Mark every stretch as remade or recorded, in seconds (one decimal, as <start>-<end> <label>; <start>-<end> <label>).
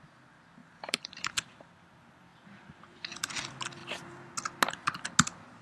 0.0-0.6 recorded; 0.6-1.7 remade; 1.7-2.3 recorded; 2.3-3.3 remade; 3.3-3.8 recorded; 3.8-4.3 remade; 4.3-5.6 recorded